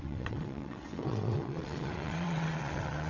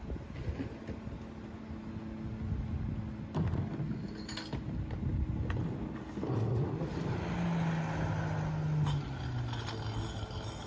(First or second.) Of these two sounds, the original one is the second